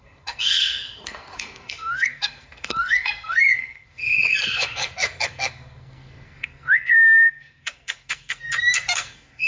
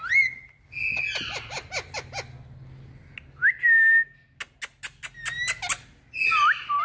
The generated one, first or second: first